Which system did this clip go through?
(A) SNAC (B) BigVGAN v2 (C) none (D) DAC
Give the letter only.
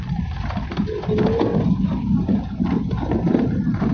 C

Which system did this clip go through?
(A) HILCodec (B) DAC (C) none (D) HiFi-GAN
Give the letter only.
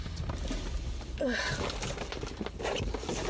C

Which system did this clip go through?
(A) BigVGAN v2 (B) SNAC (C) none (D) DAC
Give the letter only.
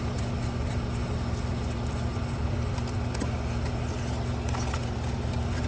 C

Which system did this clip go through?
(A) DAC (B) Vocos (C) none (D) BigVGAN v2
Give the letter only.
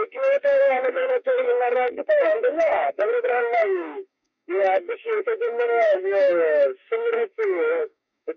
A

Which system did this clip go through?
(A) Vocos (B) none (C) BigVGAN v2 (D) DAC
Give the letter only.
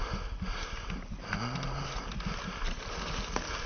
B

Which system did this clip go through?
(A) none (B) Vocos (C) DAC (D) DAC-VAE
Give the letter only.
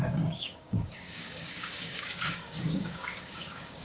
C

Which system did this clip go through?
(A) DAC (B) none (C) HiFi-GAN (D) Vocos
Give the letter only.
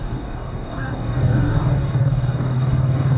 A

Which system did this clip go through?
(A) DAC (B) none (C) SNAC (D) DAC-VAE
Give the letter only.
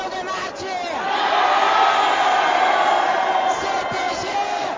B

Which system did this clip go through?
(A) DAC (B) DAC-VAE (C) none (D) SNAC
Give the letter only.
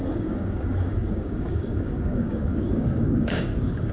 A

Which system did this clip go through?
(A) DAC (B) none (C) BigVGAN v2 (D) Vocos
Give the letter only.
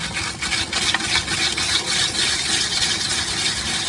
B